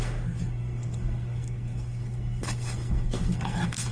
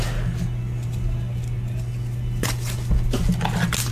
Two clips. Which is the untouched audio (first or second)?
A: second